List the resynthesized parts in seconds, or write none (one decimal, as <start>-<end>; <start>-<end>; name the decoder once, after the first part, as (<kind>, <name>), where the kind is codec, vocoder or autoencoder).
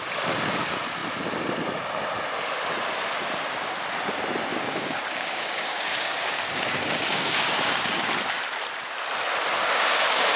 4.5-8.1 (codec, DAC); 9.6-10.4